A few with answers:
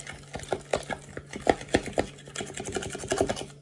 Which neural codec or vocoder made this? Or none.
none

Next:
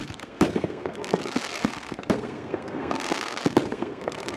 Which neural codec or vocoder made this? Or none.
codec, SNAC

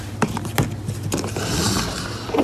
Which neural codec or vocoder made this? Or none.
none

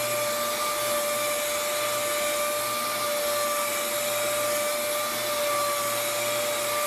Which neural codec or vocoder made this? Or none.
none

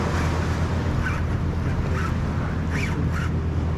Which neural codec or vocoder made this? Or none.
none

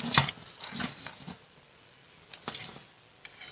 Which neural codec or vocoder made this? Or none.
none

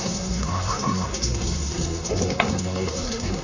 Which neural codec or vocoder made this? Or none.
codec, SNAC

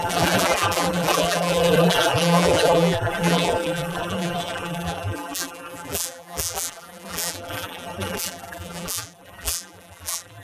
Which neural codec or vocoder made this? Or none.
vocoder, BigVGAN v2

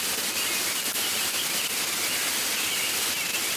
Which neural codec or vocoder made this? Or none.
none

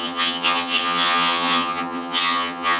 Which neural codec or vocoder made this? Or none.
vocoder, HiFi-GAN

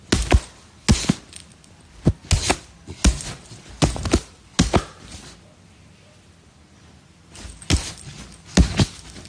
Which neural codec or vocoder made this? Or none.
none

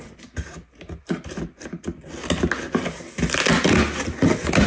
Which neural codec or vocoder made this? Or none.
none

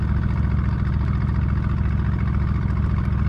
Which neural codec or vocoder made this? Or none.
none